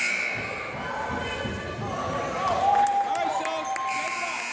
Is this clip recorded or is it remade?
recorded